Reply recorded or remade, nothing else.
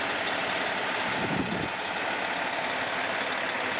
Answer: recorded